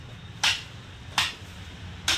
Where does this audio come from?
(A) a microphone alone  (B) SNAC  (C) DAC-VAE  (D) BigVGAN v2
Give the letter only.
A